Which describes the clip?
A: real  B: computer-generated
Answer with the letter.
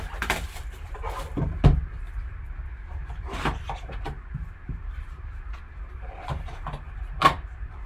B